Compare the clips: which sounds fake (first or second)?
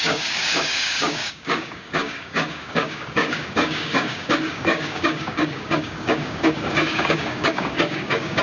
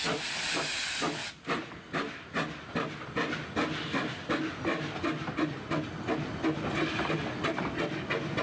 first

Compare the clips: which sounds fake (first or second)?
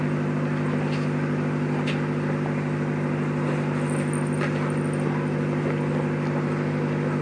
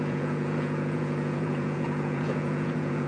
second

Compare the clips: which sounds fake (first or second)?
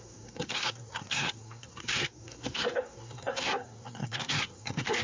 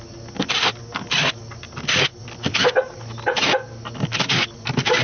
first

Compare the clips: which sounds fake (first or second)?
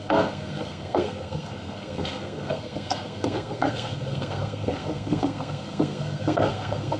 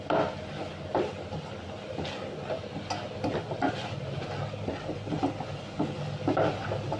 first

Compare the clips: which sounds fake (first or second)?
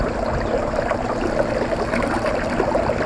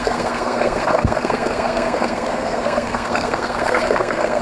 second